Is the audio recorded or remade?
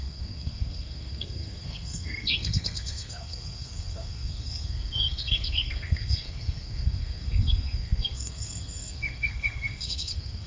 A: remade